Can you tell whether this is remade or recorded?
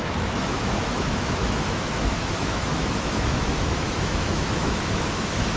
remade